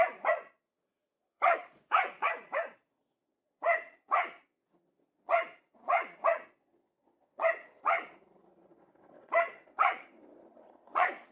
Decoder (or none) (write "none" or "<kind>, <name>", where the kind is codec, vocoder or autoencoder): vocoder, Vocos